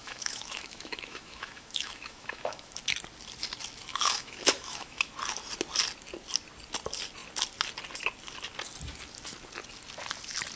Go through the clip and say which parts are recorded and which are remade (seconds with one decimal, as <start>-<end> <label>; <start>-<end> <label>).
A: 0.0-2.8 remade; 2.8-3.9 recorded; 3.9-5.1 remade; 5.1-10.6 recorded